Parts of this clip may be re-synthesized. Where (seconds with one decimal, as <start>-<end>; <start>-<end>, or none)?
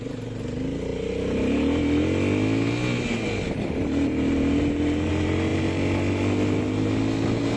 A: none